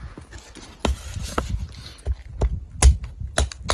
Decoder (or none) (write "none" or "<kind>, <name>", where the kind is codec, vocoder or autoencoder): none